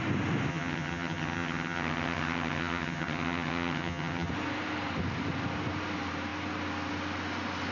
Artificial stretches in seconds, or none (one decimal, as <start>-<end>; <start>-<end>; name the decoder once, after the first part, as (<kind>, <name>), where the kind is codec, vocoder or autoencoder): 0.5-4.3 (vocoder, HiFi-GAN)